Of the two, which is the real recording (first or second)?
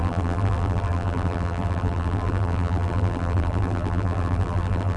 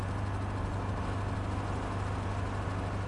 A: second